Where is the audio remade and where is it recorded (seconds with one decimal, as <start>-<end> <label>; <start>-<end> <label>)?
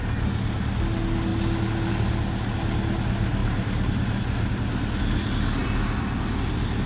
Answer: 0.0-3.4 recorded; 3.4-4.2 remade; 4.2-6.9 recorded